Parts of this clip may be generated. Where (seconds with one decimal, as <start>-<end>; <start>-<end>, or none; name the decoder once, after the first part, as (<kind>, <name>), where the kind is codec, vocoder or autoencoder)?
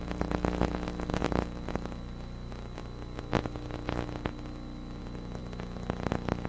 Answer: none